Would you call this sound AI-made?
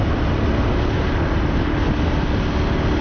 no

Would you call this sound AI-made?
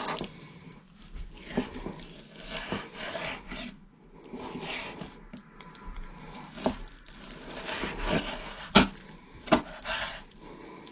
no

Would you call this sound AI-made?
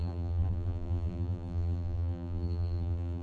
yes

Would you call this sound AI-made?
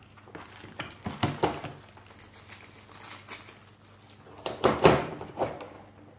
no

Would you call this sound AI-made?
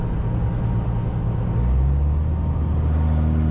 no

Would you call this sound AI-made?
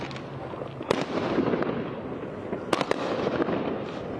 no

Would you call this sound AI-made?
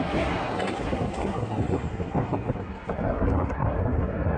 yes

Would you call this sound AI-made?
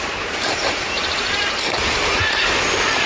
yes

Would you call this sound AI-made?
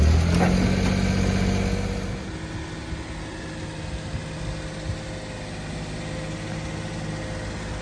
no